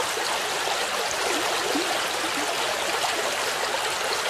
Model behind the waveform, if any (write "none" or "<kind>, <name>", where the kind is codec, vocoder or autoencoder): none